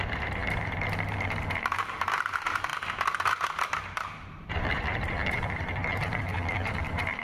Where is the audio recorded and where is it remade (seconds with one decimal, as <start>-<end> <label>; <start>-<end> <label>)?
0.0-2.7 remade; 2.7-3.3 recorded; 3.3-7.2 remade